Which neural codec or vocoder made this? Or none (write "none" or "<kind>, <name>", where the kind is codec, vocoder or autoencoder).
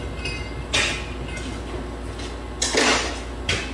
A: none